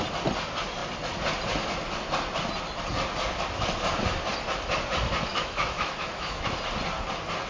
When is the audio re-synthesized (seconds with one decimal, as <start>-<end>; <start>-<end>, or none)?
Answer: 5.3-6.6